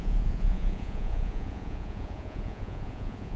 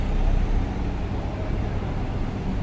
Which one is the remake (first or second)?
first